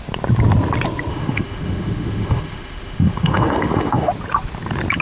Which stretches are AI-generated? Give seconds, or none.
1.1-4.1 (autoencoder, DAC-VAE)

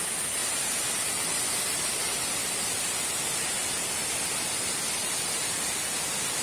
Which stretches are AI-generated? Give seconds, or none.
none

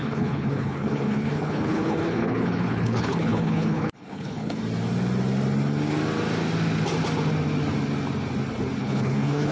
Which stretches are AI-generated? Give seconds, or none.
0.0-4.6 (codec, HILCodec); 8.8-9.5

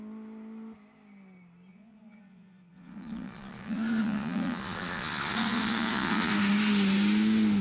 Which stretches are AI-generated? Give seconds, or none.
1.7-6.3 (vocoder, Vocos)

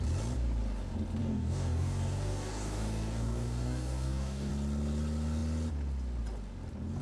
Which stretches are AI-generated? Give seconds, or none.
1.2-4.5 (codec, DAC)

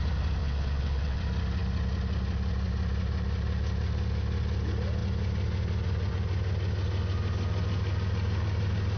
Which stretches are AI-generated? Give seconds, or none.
0.4-1.2 (vocoder, WaveNeXt)